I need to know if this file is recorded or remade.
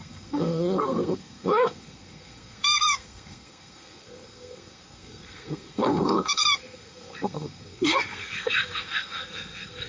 remade